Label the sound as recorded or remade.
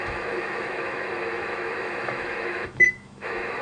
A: remade